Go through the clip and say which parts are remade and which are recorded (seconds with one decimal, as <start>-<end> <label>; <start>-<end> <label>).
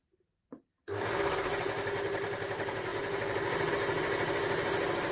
0.0-5.1 recorded